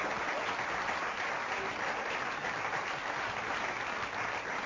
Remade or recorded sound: recorded